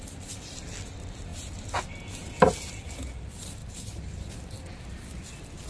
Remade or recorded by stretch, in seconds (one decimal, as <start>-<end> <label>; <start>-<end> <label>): 0.0-1.3 remade; 1.3-3.2 recorded; 3.2-5.7 remade